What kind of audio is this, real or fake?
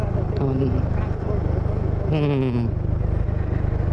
real